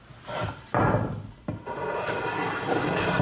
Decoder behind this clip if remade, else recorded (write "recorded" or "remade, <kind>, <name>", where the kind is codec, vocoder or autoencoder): recorded